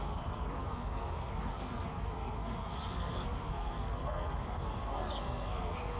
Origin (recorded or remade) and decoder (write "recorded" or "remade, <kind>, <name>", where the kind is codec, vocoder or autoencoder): remade, codec, SNAC